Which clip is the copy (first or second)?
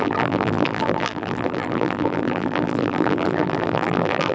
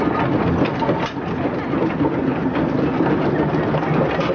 first